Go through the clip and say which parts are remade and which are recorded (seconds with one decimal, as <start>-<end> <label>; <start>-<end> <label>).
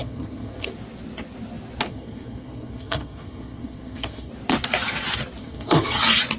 0.0-0.7 remade; 0.7-1.9 recorded; 1.9-4.3 remade; 4.3-5.4 recorded; 5.4-6.0 remade; 6.0-6.4 recorded